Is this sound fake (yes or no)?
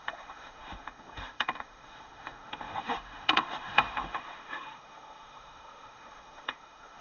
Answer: yes